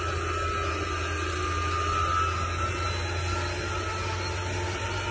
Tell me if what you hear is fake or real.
real